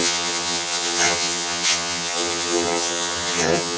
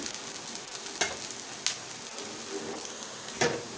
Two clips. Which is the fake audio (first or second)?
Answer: first